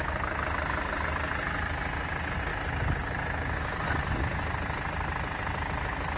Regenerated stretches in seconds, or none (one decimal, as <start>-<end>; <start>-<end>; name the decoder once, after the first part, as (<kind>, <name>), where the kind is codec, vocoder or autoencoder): none